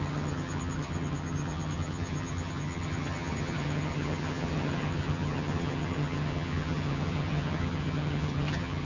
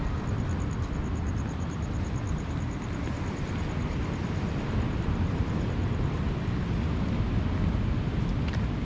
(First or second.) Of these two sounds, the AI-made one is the first